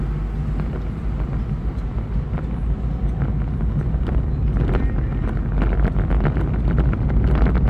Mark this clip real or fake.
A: real